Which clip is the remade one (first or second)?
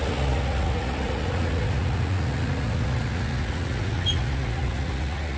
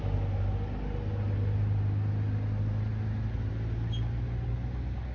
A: first